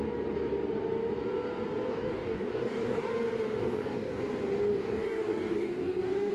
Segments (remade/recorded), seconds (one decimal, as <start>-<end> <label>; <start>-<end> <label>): 0.0-1.9 recorded; 1.9-3.1 remade; 3.1-3.6 recorded; 3.6-4.2 remade; 4.2-4.7 recorded; 4.7-6.3 remade